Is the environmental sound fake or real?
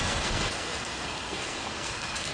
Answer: fake